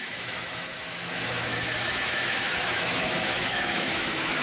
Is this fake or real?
fake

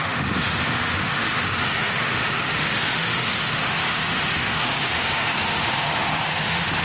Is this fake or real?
fake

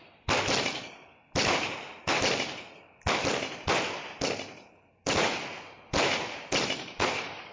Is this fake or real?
real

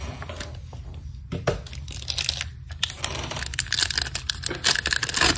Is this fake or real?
real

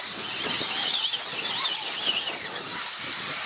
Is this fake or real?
real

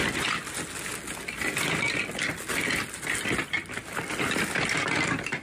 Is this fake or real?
real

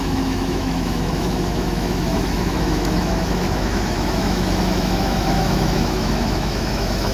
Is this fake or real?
fake